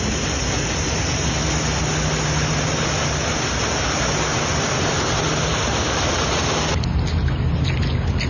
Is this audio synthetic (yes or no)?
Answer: no